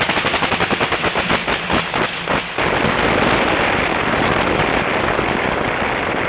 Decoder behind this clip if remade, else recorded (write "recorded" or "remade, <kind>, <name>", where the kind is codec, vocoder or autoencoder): recorded